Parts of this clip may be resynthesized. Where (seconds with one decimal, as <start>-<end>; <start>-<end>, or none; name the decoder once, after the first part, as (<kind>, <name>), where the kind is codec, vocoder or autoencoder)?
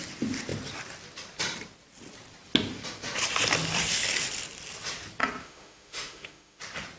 5.4-6.6 (autoencoder, DAC-VAE)